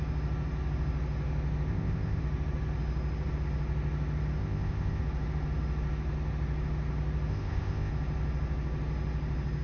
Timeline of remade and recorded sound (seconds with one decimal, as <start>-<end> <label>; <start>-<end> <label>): 0.0-1.7 recorded; 1.7-2.2 remade; 2.2-4.4 recorded; 4.4-5.0 remade; 5.0-7.3 recorded; 7.3-7.9 remade; 7.9-9.6 recorded